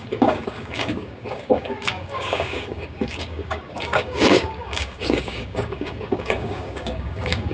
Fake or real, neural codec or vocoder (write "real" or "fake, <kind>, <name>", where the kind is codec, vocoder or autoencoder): fake, codec, DAC